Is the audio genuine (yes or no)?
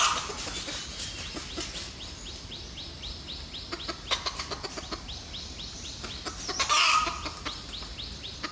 yes